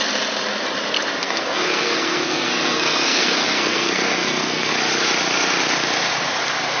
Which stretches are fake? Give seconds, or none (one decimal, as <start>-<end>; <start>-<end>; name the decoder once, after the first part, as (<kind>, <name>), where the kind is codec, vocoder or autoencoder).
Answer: 1.2-4.7 (codec, SNAC)